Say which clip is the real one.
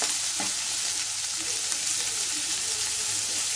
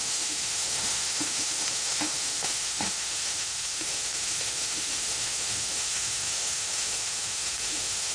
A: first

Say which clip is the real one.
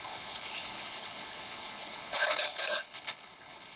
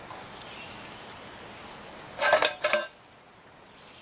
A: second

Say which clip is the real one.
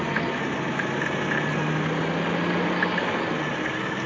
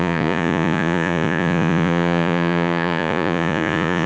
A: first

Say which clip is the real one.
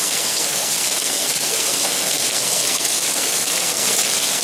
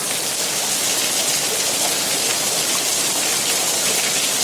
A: second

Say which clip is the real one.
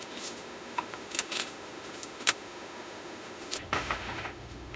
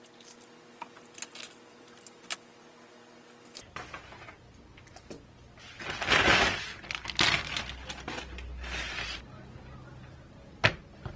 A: second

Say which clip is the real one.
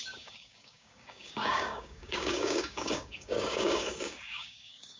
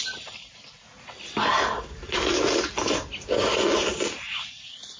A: second